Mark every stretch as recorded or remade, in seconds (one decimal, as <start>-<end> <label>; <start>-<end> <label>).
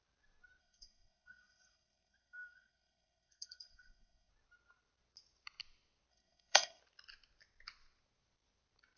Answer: 0.0-0.6 recorded; 0.6-4.3 remade; 4.3-6.1 recorded; 6.1-6.8 remade; 6.8-9.0 recorded